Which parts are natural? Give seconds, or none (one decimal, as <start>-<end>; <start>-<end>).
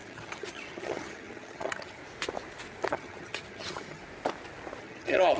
2.0-2.9; 4.0-4.8